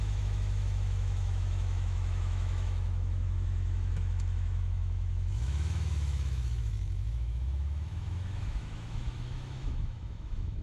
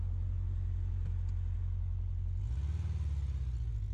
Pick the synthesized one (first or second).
first